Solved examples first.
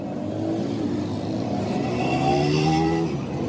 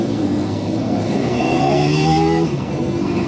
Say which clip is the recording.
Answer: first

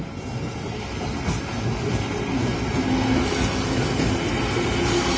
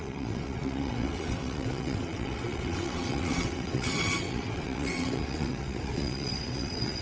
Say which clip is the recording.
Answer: first